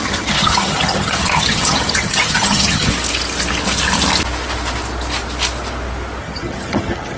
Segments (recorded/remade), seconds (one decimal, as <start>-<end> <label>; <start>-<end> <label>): 0.0-2.9 remade; 2.9-6.2 recorded; 6.2-7.2 remade

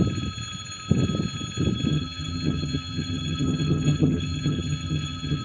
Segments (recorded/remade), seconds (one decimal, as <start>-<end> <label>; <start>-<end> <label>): 0.0-1.9 recorded; 1.9-5.4 remade

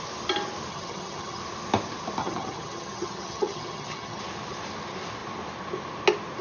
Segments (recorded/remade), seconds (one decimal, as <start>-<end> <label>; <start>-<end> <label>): 0.0-0.7 recorded; 0.7-1.4 remade; 1.4-2.2 recorded; 2.2-4.2 remade; 4.2-6.4 recorded